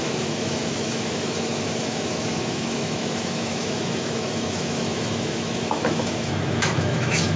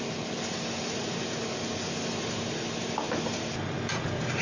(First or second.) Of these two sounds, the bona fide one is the second